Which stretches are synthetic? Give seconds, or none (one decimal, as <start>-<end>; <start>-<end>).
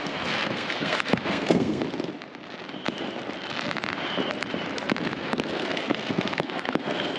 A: 0.0-1.8; 5.0-7.2